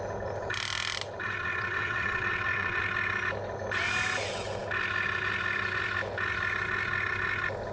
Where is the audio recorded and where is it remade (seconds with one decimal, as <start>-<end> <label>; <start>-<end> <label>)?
0.0-1.2 recorded; 1.2-2.8 remade; 2.8-7.7 recorded